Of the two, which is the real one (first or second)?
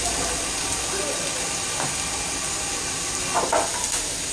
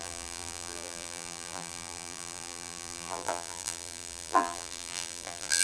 first